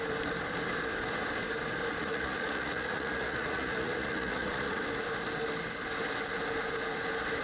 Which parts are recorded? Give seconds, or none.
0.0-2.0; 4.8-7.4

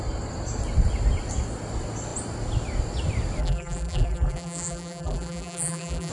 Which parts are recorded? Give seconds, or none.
0.0-3.4

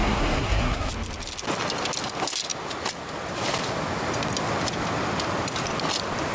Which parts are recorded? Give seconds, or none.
0.9-6.3

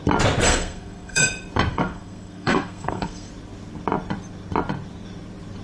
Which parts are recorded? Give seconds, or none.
0.0-0.4; 1.2-1.7; 3.3-5.6